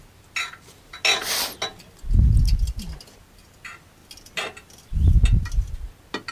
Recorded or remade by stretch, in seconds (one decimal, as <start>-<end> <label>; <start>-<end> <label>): 0.0-6.3 recorded